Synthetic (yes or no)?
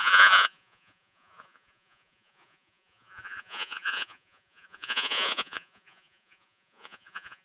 yes